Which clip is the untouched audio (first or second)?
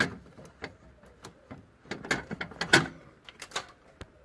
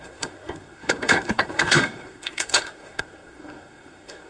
first